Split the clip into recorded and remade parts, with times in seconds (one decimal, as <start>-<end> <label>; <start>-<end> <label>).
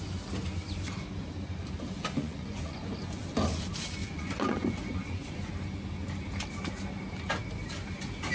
0.0-2.2 recorded; 2.2-3.2 remade; 3.2-4.0 recorded; 4.0-5.5 remade; 5.5-8.3 recorded